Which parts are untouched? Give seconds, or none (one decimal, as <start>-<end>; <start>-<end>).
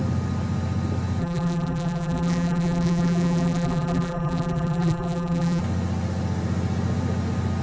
0.0-1.2; 5.6-7.6